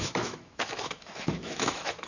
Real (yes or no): no